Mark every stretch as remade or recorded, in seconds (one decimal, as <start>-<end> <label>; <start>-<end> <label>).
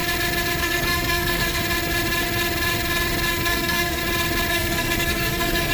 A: 0.0-0.6 recorded; 0.6-1.6 remade; 1.6-3.3 recorded; 3.3-4.0 remade; 4.0-4.5 recorded; 4.5-5.7 remade